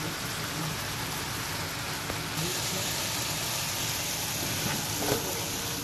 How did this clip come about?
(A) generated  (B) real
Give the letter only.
B